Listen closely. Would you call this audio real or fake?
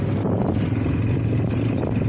real